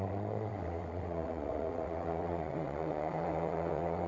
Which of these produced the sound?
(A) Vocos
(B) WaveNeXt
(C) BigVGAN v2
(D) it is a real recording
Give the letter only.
B